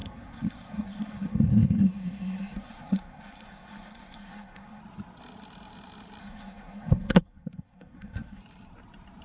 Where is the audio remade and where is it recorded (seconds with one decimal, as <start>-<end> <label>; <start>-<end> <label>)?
0.0-4.8 remade; 4.8-6.2 recorded; 6.2-8.4 remade; 8.4-9.2 recorded